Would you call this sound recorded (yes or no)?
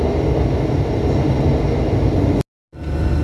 yes